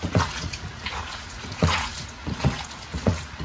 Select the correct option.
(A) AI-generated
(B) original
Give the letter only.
A